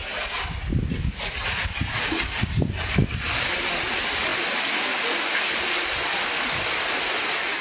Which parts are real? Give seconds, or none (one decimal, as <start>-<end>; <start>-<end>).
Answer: 0.0-1.9; 4.3-6.6